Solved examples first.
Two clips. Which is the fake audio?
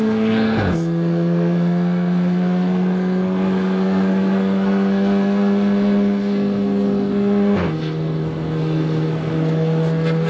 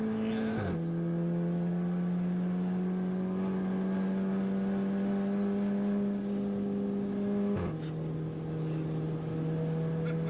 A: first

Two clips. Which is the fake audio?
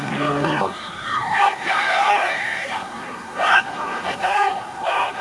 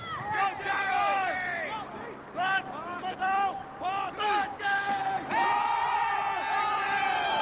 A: first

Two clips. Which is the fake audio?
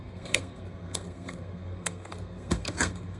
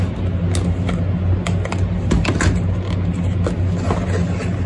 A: first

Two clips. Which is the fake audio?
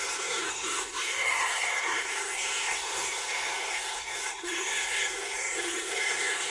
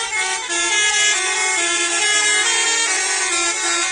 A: first